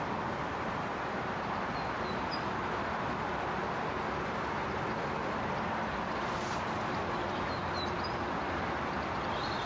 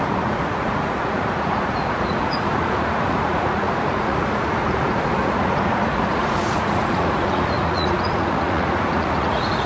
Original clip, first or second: first